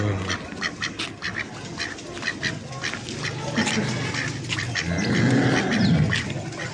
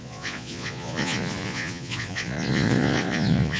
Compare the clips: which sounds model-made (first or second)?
second